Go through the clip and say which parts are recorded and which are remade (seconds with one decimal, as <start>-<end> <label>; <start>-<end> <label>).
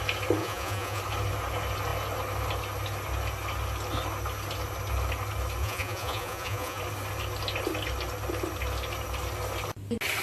0.0-0.4 recorded; 0.4-1.0 remade; 1.0-5.6 recorded; 5.6-6.8 remade; 6.8-10.2 recorded